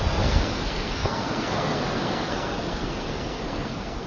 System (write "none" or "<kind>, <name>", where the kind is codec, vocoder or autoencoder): codec, SNAC